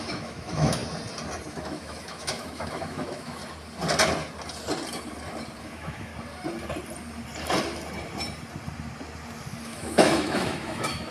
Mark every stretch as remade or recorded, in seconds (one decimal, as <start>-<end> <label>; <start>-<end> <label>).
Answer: 0.0-0.8 remade; 0.8-1.5 recorded; 1.5-3.4 remade; 3.4-5.6 recorded; 5.6-6.1 remade; 6.1-9.6 recorded; 9.6-11.1 remade